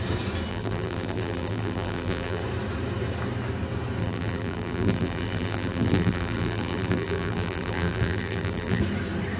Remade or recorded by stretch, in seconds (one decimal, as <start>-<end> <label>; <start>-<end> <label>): 0.0-0.5 recorded; 0.5-2.4 remade; 2.4-4.0 recorded; 4.0-8.8 remade; 8.8-9.4 recorded